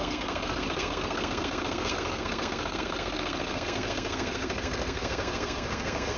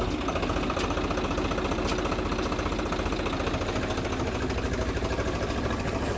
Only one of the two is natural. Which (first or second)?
second